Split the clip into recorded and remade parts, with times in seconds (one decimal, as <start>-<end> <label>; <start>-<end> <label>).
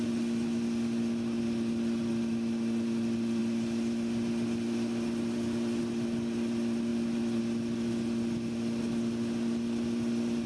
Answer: 0.0-10.5 recorded